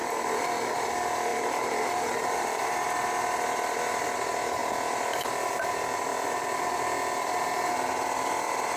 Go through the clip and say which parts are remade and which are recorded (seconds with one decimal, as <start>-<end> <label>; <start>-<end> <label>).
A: 0.0-0.7 remade; 0.7-1.3 recorded; 1.3-2.7 remade; 2.7-8.8 recorded